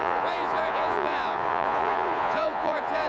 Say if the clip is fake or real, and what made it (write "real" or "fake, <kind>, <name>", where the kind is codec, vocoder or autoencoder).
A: fake, vocoder, Vocos